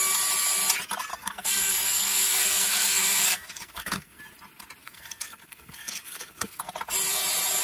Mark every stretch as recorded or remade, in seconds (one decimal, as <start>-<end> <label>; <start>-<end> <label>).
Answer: 0.0-1.1 recorded; 1.1-4.2 remade; 4.2-4.8 recorded; 4.8-6.7 remade; 6.7-7.6 recorded